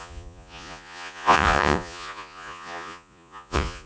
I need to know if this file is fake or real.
fake